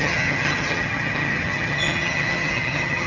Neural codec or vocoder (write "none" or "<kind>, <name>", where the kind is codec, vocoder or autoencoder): vocoder, HiFi-GAN